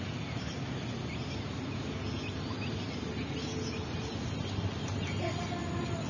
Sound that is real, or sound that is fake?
real